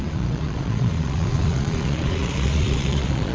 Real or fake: fake